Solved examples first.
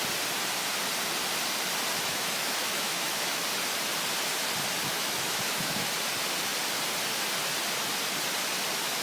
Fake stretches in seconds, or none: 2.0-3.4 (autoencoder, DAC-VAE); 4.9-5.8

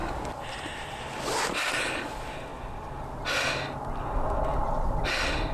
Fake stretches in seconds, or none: none

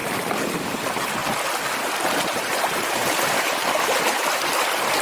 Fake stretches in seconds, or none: none

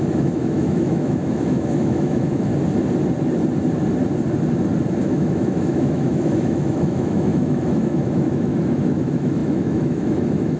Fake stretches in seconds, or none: 0.0-2.5 (autoencoder, DAC-VAE); 5.0-10.6

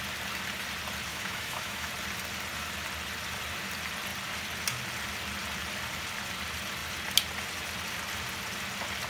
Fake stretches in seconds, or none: 1.1-1.9 (autoencoder, DAC-VAE)

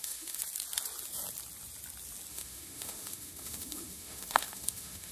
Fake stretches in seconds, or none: 0.0-0.4 (autoencoder, DAC-VAE); 2.3-5.1

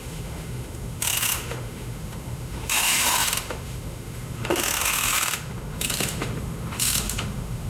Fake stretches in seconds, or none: 0.0-7.7 (autoencoder, DAC-VAE)